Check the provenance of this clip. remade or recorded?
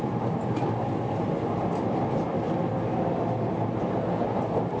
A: recorded